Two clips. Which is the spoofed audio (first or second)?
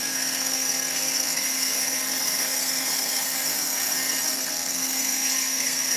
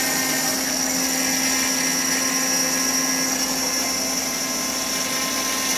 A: first